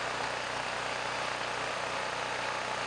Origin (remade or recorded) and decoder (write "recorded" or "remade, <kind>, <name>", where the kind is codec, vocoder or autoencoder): recorded